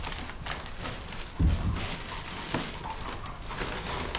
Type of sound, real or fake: real